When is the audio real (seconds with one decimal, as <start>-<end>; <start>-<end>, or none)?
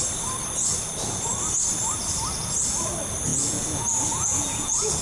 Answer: 0.0-3.3